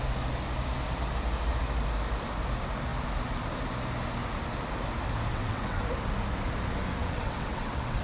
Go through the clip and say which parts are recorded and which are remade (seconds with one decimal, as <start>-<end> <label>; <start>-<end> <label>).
0.0-5.3 recorded; 5.3-5.8 remade; 5.8-7.0 recorded; 7.0-8.0 remade